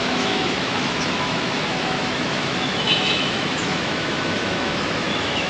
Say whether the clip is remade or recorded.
remade